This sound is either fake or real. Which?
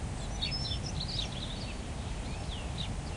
real